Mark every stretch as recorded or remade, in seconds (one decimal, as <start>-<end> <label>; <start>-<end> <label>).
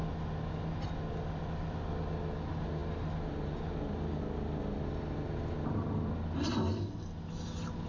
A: 0.0-7.9 recorded